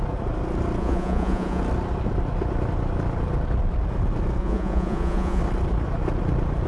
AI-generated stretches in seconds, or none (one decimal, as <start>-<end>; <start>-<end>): 0.8-1.6; 4.4-5.4